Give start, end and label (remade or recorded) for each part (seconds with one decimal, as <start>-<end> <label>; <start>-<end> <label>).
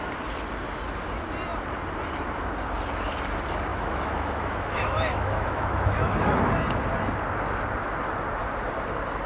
0.0-3.7 recorded; 3.7-6.4 remade; 6.4-9.3 recorded